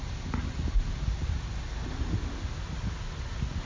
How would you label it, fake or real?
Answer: real